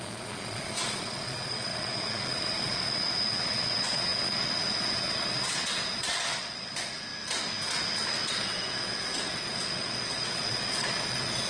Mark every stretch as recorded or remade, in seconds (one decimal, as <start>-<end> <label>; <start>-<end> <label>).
0.0-7.1 remade; 7.1-8.3 recorded; 8.3-11.5 remade